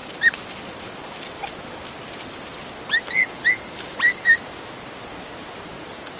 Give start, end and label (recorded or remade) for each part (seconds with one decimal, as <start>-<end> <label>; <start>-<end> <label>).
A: 0.0-6.2 recorded